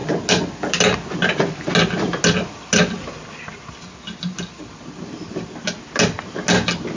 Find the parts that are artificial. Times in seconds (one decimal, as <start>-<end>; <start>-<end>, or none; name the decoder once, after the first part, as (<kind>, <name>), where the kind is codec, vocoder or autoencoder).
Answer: none